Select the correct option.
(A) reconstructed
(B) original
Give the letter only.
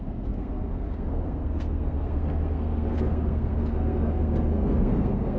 A